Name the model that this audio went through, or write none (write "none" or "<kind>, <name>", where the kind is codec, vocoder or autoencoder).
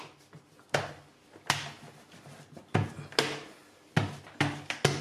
none